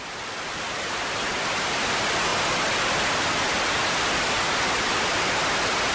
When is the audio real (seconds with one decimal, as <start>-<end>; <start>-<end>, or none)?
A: 0.0-5.9